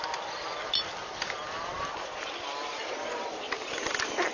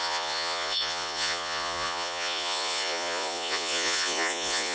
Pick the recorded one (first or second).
first